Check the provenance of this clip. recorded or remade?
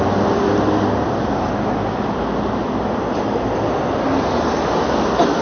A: recorded